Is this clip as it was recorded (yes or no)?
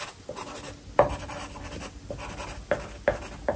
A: yes